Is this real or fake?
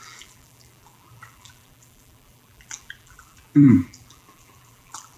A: fake